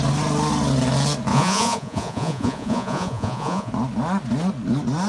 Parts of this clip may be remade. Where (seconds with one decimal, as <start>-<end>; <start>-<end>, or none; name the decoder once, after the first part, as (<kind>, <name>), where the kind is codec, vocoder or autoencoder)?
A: 1.3-3.7 (vocoder, Vocos)